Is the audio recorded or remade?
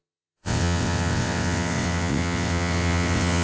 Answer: remade